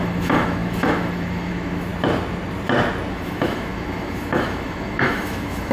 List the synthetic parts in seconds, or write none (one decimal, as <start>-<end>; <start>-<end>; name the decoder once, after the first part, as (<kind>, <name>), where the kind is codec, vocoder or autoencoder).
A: 0.0-1.9 (autoencoder, DAC-VAE); 3.1-5.7

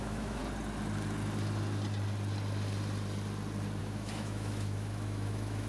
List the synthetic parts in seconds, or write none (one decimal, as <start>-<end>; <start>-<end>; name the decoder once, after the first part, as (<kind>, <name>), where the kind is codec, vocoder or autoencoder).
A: 0.0-0.4 (autoencoder, DAC-VAE); 3.8-5.7

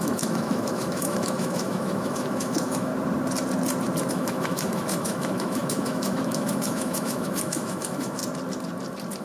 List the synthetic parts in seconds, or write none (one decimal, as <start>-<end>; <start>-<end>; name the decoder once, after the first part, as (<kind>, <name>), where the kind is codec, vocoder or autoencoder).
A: 0.0-2.9 (autoencoder, DAC-VAE); 4.1-8.2

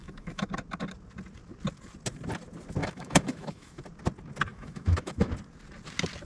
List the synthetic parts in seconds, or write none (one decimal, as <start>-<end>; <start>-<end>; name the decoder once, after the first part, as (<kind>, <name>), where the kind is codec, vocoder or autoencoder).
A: 0.0-0.5 (autoencoder, DAC-VAE); 2.8-3.8; 4.5-5.3

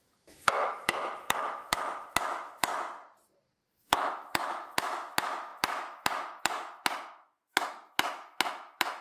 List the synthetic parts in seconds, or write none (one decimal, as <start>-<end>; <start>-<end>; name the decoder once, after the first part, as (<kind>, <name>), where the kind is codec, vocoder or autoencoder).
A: 0.0-2.7 (autoencoder, DAC-VAE); 3.7-9.0

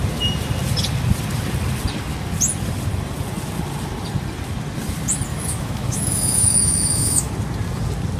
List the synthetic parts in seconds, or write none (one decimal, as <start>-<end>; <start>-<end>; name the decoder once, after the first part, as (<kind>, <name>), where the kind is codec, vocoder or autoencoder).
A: 5.3-7.3 (autoencoder, DAC-VAE)

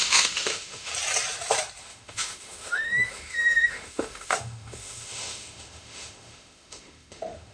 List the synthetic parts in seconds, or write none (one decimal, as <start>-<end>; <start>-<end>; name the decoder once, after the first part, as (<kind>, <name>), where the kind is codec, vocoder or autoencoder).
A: 0.0-0.9 (autoencoder, DAC-VAE); 1.8-7.5

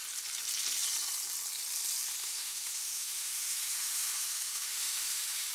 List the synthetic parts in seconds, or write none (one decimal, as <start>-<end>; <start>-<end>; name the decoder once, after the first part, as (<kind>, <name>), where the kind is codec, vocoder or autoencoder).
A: 2.2-5.5 (autoencoder, DAC-VAE)